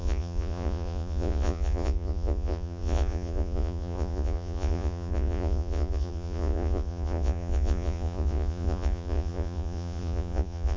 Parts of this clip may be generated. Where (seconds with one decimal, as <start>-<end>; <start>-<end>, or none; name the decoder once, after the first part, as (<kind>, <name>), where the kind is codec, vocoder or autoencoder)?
0.0-10.8 (vocoder, Vocos)

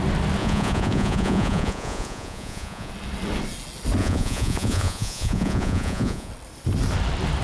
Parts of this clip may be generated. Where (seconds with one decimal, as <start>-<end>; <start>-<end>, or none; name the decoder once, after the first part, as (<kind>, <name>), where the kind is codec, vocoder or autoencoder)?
0.4-2.9 (vocoder, Vocos); 4.0-6.3

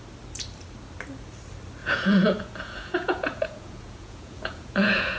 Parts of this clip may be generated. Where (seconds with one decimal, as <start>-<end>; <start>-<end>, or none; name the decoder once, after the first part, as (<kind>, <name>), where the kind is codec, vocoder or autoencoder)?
1.8-5.2 (vocoder, Vocos)

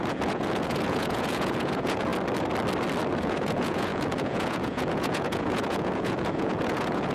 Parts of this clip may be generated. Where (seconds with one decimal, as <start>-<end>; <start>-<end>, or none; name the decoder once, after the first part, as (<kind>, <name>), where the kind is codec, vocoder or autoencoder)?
0.0-2.1 (vocoder, Vocos); 3.2-7.1

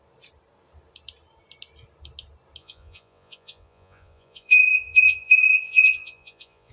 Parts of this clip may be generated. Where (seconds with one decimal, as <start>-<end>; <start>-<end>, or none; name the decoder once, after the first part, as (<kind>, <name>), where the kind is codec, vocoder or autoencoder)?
2.6-6.7 (vocoder, Vocos)